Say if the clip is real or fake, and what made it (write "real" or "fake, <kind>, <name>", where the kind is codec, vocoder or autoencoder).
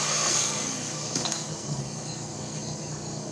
fake, codec, SNAC